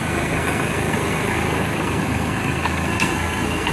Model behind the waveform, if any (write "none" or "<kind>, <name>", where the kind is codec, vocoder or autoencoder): codec, SNAC